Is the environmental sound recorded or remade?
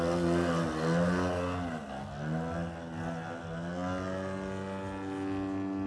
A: recorded